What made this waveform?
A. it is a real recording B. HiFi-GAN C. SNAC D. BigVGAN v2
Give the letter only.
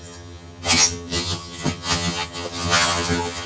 B